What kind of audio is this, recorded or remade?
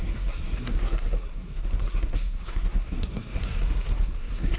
remade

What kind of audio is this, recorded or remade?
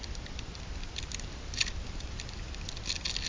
recorded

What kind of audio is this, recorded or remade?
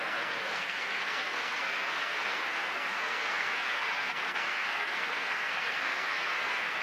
remade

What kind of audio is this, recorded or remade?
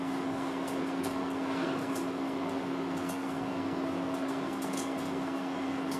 remade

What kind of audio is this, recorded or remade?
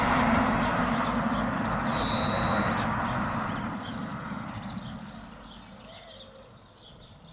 recorded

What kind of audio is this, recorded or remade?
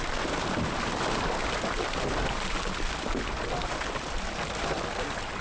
recorded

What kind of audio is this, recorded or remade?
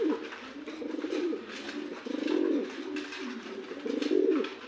recorded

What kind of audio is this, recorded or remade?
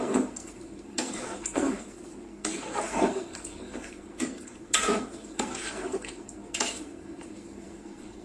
remade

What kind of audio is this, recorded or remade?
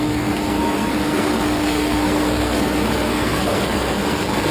remade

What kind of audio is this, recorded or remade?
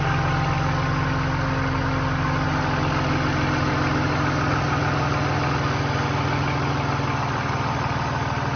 recorded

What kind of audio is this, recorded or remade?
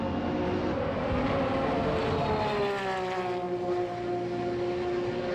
recorded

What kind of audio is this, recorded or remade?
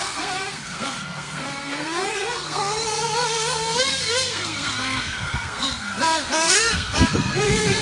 remade